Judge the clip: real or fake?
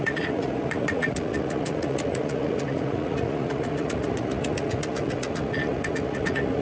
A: fake